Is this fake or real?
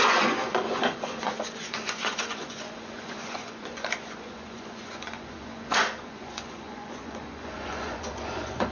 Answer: fake